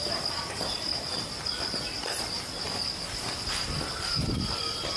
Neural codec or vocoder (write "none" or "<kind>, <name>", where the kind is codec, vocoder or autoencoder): none